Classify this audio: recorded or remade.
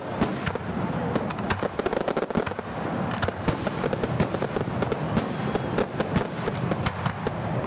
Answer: recorded